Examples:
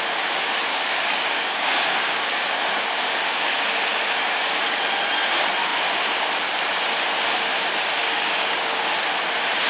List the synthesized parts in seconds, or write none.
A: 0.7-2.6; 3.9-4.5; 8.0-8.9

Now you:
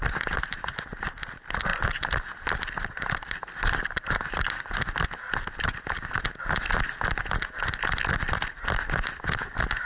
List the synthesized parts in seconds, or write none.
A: 1.7-4.3

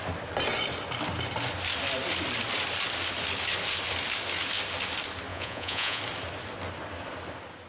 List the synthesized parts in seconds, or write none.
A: 5.3-6.0

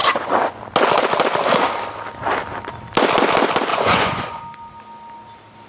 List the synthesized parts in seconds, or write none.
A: 0.0-0.6; 3.7-4.4

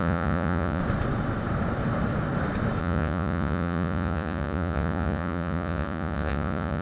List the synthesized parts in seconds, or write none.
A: 0.0-0.8; 2.8-6.8

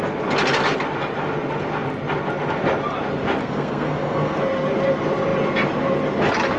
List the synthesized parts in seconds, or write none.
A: 3.4-4.4

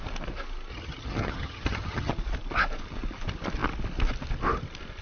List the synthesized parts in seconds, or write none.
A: 0.7-2.1

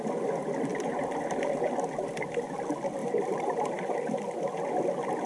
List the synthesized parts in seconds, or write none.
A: 0.7-1.7; 3.0-4.0